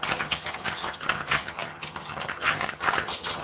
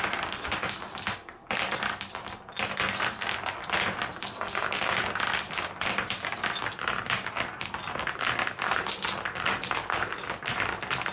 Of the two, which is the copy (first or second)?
first